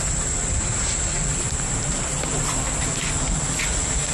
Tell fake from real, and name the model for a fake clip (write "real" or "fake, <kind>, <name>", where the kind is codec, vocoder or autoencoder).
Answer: real